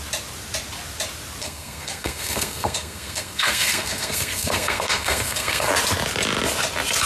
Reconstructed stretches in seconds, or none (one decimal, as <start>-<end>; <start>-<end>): 1.4-5.7